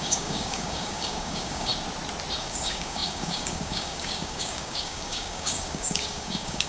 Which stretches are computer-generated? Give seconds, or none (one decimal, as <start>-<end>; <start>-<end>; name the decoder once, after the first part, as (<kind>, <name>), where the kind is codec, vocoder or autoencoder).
0.0-1.7 (codec, DAC); 2.4-6.7